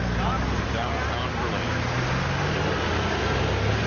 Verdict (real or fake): real